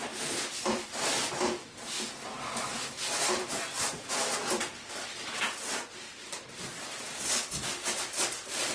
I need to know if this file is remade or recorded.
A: remade